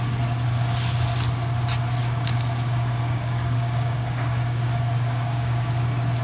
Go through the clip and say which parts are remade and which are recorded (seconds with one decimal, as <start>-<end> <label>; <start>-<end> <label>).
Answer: 0.0-2.0 recorded; 2.0-5.7 remade; 5.7-6.2 recorded